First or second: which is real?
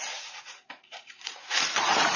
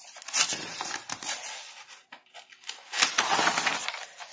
second